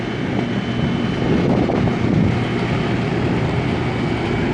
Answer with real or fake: real